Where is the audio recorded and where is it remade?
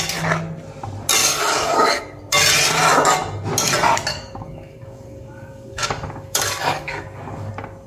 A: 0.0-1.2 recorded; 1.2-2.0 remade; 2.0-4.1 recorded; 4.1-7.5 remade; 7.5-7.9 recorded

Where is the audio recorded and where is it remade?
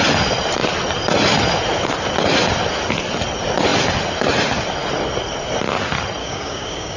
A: 0.0-6.2 recorded; 6.2-7.0 remade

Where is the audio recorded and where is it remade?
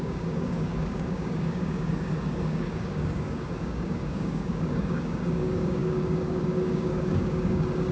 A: 0.0-7.9 remade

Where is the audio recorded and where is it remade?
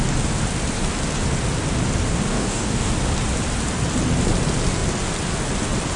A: 0.0-2.3 recorded; 2.3-2.9 remade; 2.9-6.0 recorded